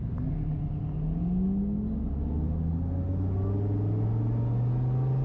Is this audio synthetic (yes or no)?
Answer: no